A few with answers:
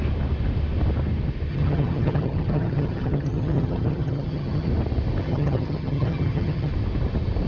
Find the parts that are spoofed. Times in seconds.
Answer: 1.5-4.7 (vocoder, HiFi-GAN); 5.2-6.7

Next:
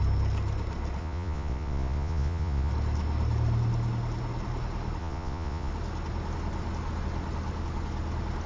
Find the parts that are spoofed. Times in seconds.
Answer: 1.0-2.7 (vocoder, Vocos); 5.0-5.7

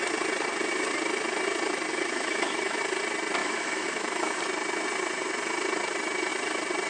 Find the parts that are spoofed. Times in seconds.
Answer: 1.9-2.8 (autoencoder, DAC-VAE); 3.4-4.4

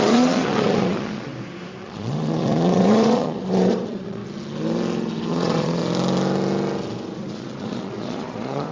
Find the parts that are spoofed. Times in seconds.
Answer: 0.0-1.3 (vocoder, Vocos); 1.8-4.2; 5.3-5.8; 7.3-8.7

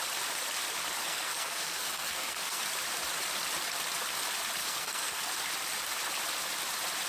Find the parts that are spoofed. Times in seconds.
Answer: 1.0-2.6 (codec, SNAC); 4.6-5.3